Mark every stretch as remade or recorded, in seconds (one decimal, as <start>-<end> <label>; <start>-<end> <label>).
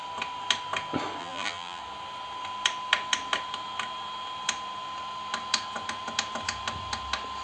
0.0-1.2 recorded; 1.2-1.8 remade; 1.8-7.4 recorded